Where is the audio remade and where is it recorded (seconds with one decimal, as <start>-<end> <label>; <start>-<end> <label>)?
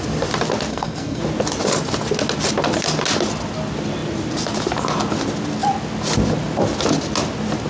0.0-0.7 recorded; 0.7-1.2 remade; 1.2-7.7 recorded